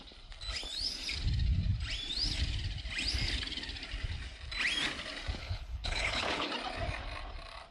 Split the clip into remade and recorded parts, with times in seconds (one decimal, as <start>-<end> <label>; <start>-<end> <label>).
0.0-5.4 recorded; 5.4-6.5 remade; 6.5-7.7 recorded